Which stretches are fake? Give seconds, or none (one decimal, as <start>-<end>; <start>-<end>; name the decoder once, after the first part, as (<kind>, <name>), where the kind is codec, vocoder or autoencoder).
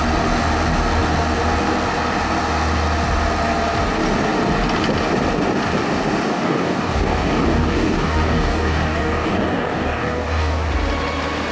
6.3-10.7 (codec, DAC)